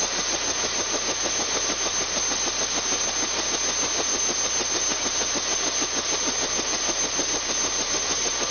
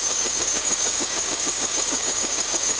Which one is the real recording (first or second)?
first